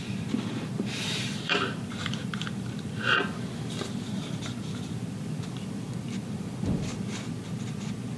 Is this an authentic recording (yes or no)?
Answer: no